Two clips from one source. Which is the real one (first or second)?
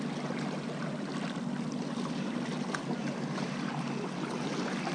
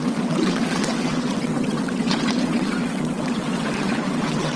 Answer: first